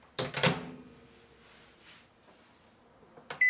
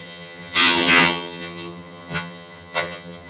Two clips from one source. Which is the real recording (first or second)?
first